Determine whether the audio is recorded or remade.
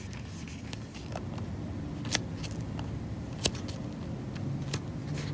recorded